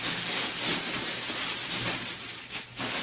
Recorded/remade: recorded